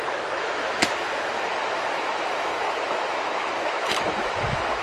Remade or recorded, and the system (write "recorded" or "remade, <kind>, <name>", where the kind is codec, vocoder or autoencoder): remade, autoencoder, DAC-VAE